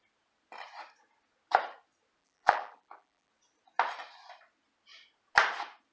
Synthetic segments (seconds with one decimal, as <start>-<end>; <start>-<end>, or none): 2.2-3.3